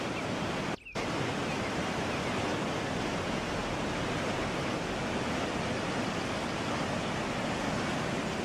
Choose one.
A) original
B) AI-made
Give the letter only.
A